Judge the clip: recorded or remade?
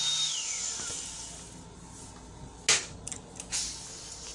recorded